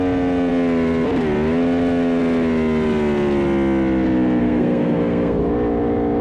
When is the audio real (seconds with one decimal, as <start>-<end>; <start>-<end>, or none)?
0.0-4.4; 5.4-6.2